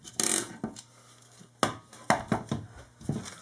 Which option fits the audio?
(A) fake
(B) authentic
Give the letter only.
B